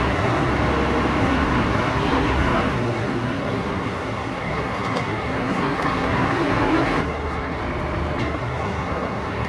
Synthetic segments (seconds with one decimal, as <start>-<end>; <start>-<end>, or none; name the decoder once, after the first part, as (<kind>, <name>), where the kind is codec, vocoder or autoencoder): 0.0-0.5 (codec, SNAC); 1.2-7.6; 8.2-9.5